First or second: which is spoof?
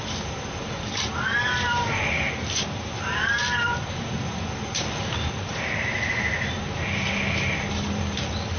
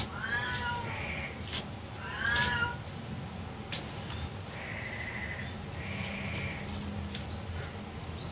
first